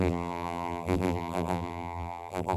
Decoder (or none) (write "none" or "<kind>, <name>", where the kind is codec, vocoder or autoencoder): vocoder, BigVGAN v2